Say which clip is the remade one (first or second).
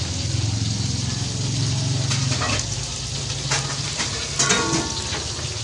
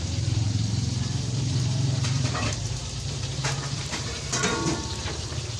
second